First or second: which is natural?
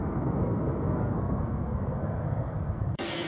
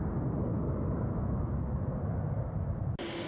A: second